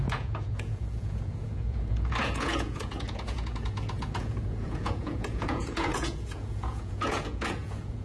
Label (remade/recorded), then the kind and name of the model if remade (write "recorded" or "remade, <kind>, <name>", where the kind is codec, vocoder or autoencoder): remade, vocoder, Vocos